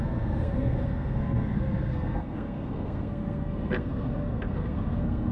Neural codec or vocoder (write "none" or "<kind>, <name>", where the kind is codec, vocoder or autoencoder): codec, SNAC